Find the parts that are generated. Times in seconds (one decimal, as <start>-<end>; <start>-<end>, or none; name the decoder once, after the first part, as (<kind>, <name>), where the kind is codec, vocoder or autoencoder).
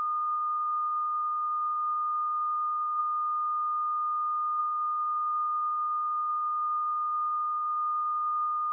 0.0-3.0 (codec, SNAC); 4.6-8.7